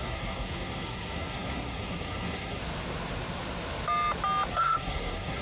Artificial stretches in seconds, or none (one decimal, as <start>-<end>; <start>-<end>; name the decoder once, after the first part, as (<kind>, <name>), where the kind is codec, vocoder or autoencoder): 0.0-2.6 (codec, SNAC); 4.5-5.4